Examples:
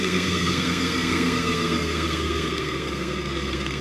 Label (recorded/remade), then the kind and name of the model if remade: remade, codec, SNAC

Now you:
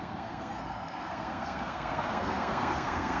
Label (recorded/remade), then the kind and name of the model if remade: remade, codec, SNAC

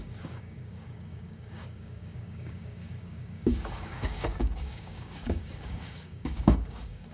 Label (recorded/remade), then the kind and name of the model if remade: remade, codec, DAC